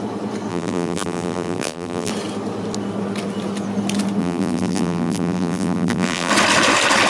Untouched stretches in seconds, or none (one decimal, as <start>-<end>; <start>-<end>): 0.0-0.5; 2.1-4.2; 6.3-7.1